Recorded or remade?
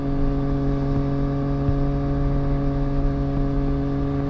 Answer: recorded